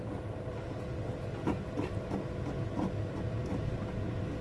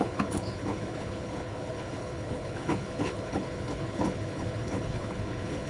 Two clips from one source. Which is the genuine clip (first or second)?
first